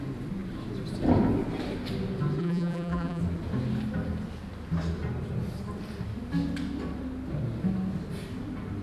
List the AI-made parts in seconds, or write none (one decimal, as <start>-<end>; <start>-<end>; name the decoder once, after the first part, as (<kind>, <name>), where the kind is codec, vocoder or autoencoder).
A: 2.4-3.2 (vocoder, BigVGAN v2)